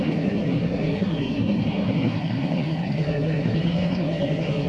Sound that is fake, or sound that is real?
fake